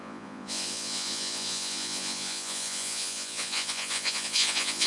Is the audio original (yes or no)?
no